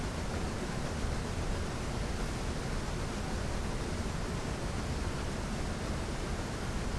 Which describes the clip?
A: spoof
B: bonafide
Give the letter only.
B